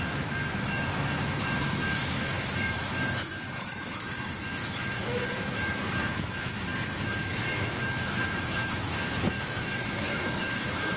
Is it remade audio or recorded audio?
remade